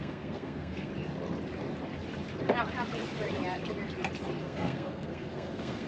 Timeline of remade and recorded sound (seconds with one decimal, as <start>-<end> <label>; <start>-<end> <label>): 0.0-0.9 remade; 0.9-4.4 recorded; 4.4-5.9 remade